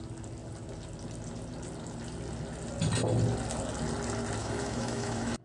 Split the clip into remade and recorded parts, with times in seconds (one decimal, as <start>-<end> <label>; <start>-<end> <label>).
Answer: 0.0-4.4 recorded; 4.4-5.4 remade